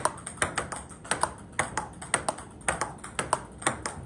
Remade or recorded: recorded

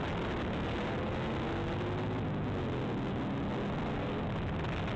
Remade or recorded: recorded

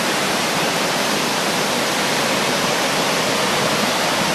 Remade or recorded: recorded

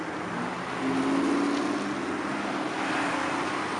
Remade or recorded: recorded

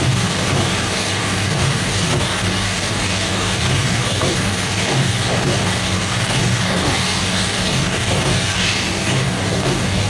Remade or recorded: remade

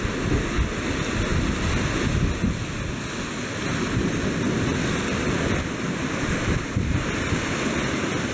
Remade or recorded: recorded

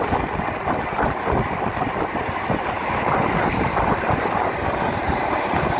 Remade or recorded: recorded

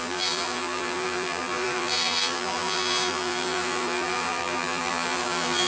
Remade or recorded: remade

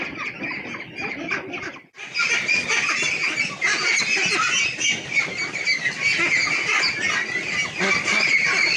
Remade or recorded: recorded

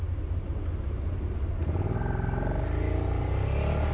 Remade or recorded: recorded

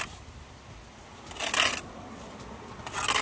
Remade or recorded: recorded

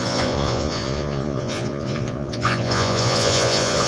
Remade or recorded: remade